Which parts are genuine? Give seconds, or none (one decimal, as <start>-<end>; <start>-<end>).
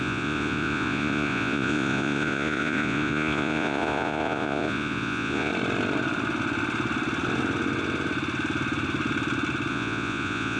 5.5-9.7